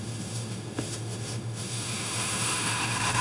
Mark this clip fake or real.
fake